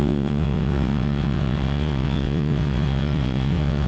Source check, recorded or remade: remade